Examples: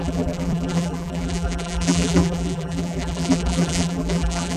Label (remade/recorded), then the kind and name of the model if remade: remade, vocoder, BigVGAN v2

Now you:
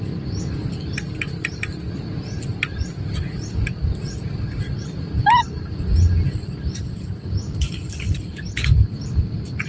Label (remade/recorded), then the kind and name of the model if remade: recorded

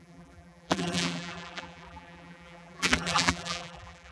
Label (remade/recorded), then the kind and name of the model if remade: remade, vocoder, BigVGAN v2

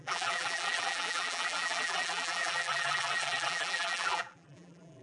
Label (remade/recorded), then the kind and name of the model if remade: remade, vocoder, BigVGAN v2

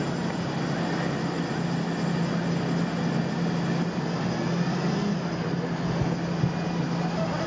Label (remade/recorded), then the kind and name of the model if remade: recorded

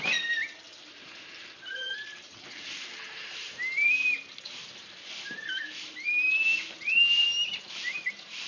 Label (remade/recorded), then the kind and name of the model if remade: remade, vocoder, BigVGAN v2